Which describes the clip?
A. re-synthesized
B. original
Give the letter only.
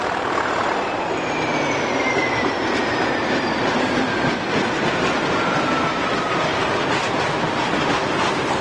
A